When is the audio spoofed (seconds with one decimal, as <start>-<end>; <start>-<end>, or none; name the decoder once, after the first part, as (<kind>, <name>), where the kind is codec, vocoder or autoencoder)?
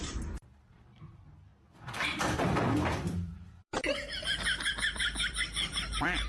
0.0-6.3 (vocoder, BigVGAN v2)